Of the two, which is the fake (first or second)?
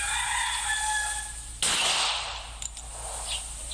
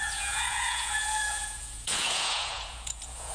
second